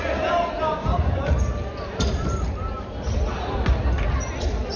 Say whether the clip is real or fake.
real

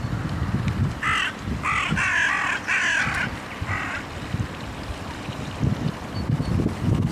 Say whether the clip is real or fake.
real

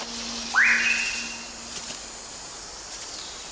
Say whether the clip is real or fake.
real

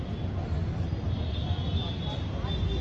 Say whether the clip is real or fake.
real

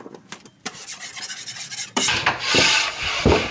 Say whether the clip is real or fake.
fake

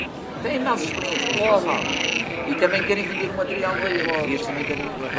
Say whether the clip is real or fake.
real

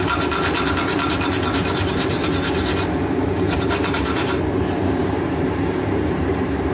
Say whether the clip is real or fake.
fake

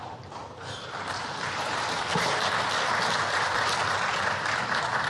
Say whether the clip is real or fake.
real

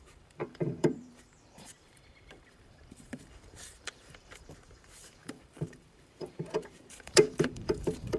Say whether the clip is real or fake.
fake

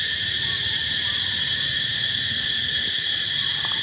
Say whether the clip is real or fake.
real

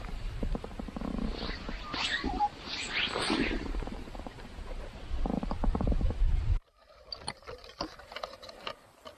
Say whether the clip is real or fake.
fake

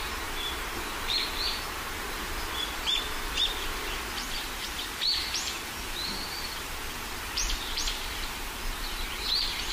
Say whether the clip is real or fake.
fake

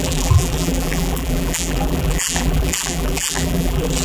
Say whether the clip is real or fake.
fake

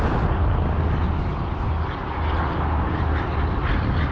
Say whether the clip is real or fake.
real